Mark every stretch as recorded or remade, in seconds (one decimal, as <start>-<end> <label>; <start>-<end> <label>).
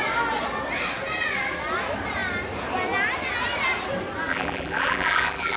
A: 0.0-4.3 recorded; 4.3-5.6 remade